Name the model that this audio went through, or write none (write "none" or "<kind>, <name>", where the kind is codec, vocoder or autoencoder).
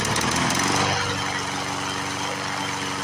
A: none